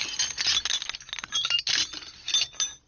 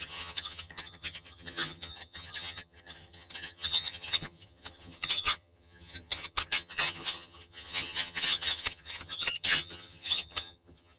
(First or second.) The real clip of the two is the first